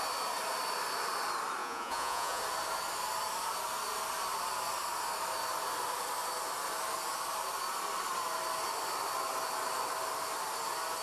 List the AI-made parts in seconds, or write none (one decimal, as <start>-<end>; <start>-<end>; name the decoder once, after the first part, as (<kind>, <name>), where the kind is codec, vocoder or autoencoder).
1.6-2.4 (vocoder, Vocos)